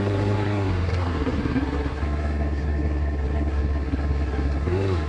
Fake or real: fake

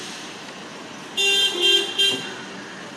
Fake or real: real